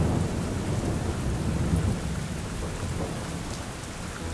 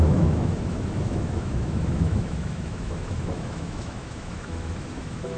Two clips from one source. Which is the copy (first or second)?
second